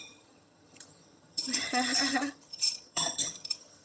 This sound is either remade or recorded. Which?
remade